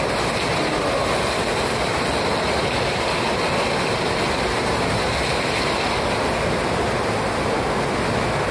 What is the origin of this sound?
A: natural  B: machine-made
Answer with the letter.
A